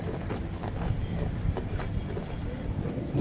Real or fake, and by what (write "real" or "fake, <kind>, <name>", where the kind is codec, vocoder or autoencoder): real